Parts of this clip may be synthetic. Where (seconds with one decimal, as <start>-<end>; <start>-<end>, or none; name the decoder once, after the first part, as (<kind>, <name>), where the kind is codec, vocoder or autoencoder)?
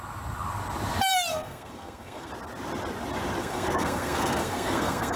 1.3-2.3 (codec, SNAC); 3.4-5.2